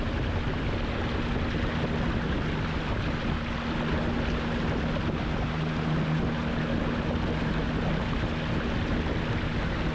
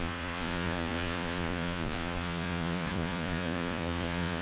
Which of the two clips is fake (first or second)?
second